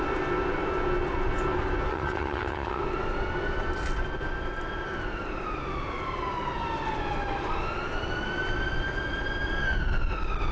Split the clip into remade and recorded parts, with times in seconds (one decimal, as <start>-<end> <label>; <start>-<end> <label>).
0.0-1.9 recorded; 1.9-2.8 remade; 2.8-10.5 recorded